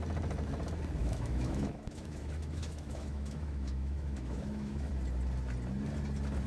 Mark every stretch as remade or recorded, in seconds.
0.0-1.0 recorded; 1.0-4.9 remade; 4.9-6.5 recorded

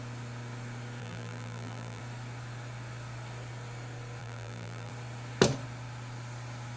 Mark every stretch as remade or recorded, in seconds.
0.0-1.0 recorded; 1.0-2.0 remade; 2.0-4.2 recorded; 4.2-4.9 remade; 4.9-6.8 recorded

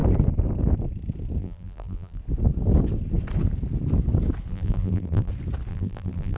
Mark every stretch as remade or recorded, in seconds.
0.0-1.4 recorded; 1.4-2.2 remade; 2.2-4.5 recorded; 4.5-5.3 remade; 5.3-5.7 recorded; 5.7-6.4 remade

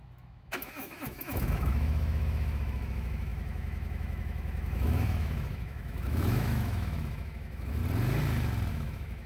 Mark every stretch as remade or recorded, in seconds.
0.0-7.8 remade; 7.8-8.7 recorded; 8.7-9.3 remade

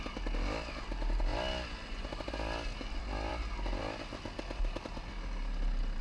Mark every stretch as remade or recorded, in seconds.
0.0-6.0 recorded

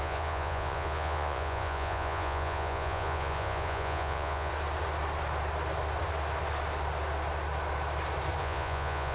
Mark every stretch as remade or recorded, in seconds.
0.0-4.5 remade; 4.5-8.4 recorded; 8.4-9.1 remade

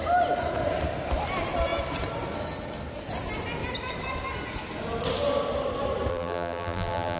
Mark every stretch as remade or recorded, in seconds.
0.0-6.1 recorded; 6.1-7.2 remade